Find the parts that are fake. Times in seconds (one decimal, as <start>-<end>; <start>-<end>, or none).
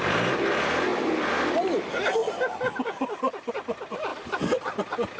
0.0-2.2; 3.5-4.1